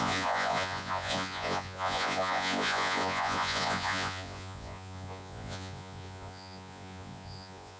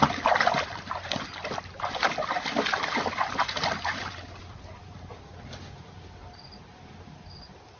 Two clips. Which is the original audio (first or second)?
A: second